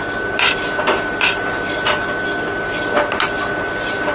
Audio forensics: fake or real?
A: real